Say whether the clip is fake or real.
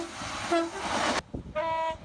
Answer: real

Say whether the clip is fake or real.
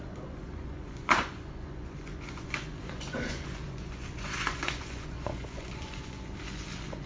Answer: fake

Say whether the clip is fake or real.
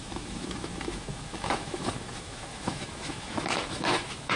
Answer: fake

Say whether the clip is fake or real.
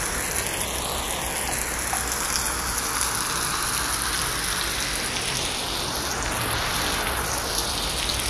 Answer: real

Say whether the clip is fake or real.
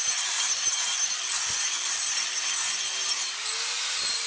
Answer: real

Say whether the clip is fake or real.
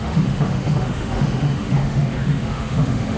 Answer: fake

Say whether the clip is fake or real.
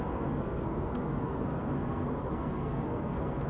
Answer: fake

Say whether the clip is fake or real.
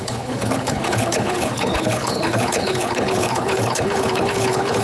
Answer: fake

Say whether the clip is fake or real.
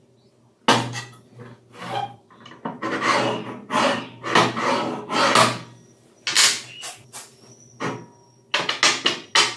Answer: real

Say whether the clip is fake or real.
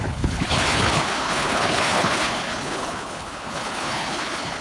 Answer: fake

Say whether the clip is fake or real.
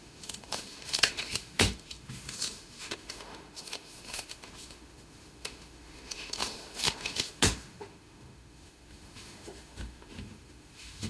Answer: fake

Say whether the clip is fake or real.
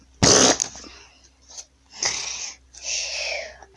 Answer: real